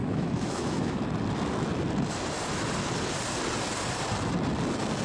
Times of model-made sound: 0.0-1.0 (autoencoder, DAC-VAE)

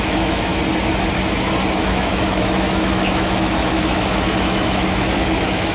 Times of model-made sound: 0.0-0.5 (autoencoder, DAC-VAE); 1.8-5.7